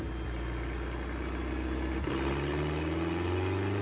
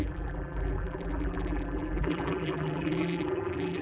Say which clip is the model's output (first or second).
second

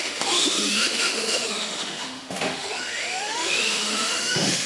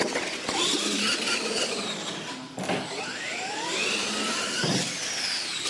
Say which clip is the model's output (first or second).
first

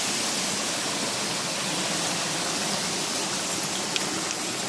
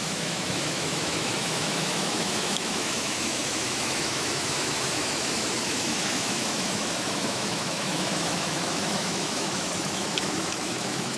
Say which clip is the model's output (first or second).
second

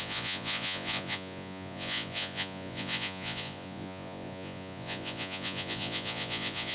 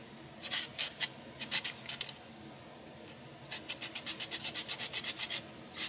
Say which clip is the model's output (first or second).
first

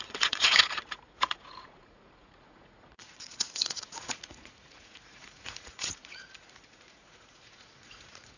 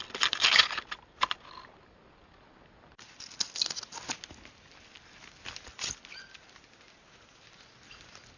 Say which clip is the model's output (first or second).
first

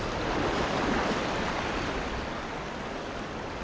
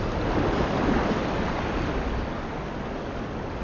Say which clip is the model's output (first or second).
first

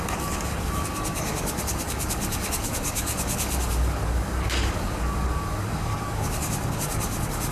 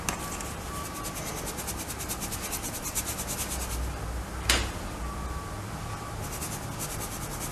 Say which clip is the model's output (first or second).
first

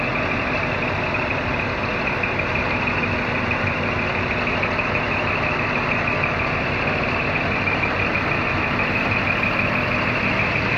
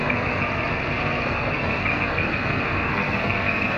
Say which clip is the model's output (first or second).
second